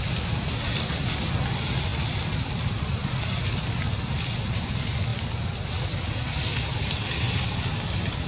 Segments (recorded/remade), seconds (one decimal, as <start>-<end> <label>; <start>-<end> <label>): 0.0-1.9 recorded; 1.9-3.1 remade; 3.1-5.1 recorded; 5.1-5.7 remade; 5.7-8.3 recorded